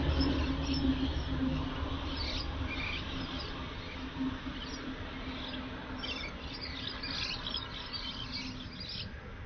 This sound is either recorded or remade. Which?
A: recorded